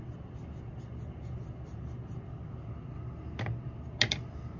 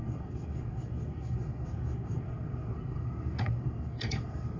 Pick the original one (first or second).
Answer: first